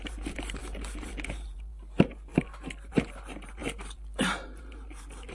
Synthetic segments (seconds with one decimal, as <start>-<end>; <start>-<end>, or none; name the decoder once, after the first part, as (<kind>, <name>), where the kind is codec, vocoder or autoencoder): 0.0-2.3 (vocoder, BigVGAN v2); 2.9-5.3